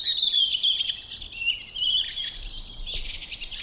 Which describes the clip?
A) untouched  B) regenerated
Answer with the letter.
A